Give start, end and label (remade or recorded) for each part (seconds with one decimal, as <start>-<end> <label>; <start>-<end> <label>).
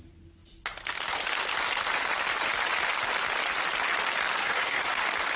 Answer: 0.0-4.4 recorded; 4.4-5.0 remade; 5.0-5.4 recorded